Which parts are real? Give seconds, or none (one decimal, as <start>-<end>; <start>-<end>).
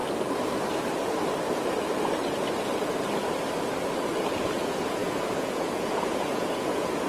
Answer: 0.0-4.3